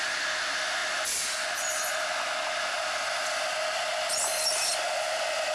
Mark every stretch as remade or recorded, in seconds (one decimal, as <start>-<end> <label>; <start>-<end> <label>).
0.0-5.5 recorded